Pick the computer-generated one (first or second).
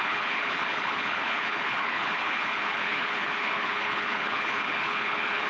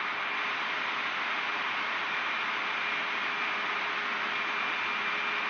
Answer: first